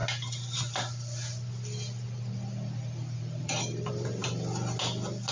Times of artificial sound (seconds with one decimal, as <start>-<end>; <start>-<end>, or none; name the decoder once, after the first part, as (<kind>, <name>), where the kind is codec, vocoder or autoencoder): 3.2-4.2 (vocoder, BigVGAN v2)